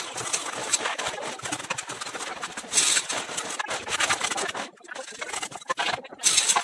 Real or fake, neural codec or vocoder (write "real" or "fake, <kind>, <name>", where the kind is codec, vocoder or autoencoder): real